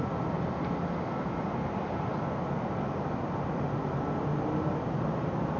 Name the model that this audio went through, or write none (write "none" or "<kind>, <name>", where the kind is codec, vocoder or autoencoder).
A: none